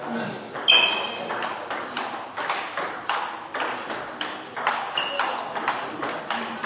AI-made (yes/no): no